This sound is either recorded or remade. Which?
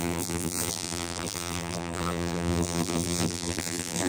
remade